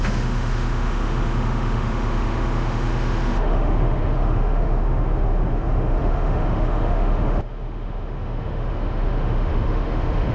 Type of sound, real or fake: fake